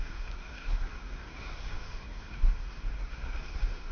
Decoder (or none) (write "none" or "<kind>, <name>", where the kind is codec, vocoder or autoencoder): codec, SNAC